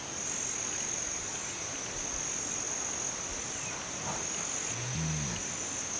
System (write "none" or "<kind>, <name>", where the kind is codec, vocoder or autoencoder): none